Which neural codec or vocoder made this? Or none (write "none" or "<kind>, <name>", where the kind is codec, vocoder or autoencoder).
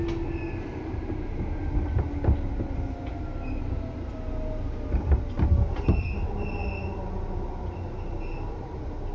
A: none